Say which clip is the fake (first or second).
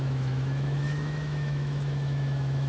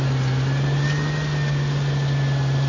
first